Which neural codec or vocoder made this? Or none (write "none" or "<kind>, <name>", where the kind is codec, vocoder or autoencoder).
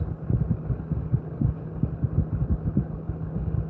none